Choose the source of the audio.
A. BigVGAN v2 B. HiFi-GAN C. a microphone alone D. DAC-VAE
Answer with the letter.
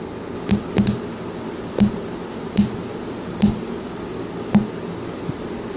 C